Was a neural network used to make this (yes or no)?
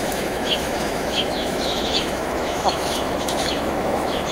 yes